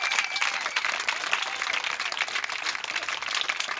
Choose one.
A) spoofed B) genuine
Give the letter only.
B